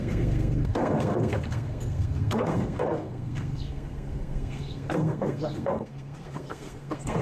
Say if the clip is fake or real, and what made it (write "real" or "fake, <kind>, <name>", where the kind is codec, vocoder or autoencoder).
fake, codec, SNAC